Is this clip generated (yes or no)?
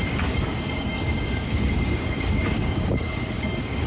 yes